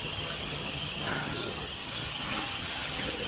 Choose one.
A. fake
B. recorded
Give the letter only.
A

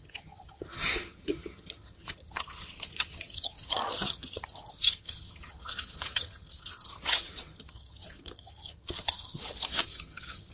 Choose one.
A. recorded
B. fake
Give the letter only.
B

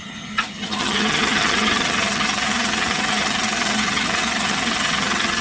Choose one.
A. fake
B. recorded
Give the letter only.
A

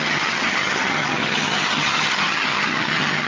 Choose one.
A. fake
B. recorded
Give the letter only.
A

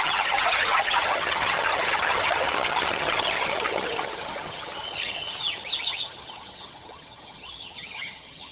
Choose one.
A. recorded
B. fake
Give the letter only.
B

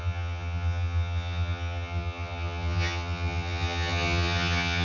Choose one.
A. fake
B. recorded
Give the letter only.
A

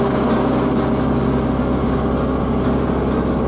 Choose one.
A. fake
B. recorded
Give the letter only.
B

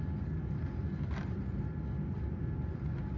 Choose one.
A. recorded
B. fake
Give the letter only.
A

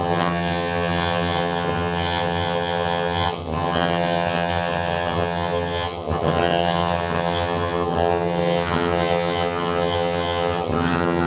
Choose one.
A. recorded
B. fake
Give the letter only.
B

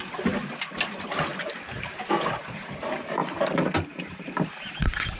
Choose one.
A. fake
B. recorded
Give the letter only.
B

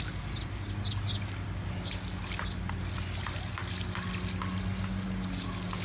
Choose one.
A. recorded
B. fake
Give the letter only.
A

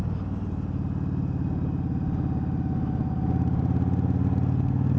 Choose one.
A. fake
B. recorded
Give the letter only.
B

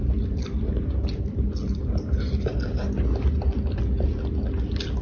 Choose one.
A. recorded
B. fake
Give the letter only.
A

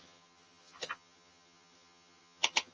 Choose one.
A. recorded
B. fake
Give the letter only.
B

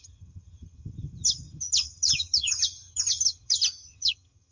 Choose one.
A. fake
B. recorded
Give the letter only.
A